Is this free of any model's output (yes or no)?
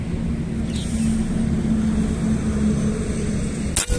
yes